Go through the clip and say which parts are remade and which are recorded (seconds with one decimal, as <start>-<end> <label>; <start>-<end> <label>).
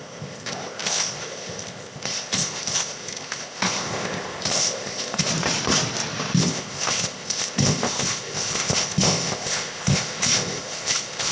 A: 0.0-5.3 remade; 5.3-6.4 recorded; 6.4-11.3 remade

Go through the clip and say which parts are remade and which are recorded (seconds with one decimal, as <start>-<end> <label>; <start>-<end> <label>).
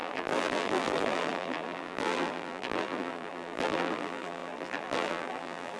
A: 0.0-5.8 remade